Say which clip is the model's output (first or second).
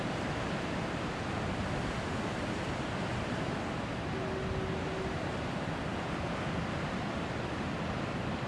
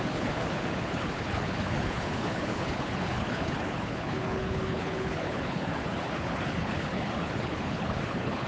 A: second